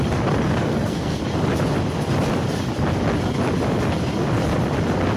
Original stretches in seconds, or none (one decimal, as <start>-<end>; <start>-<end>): 0.0-0.6; 1.2-5.2